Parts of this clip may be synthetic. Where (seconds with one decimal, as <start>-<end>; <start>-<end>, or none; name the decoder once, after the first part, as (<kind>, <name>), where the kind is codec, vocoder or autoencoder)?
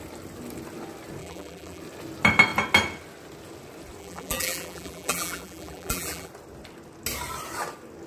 1.2-1.8 (vocoder, BigVGAN v2); 4.0-6.3